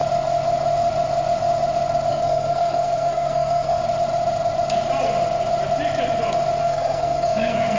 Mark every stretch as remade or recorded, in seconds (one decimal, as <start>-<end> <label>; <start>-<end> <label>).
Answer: 0.0-2.1 recorded; 2.1-3.8 remade; 3.8-6.6 recorded; 6.6-7.8 remade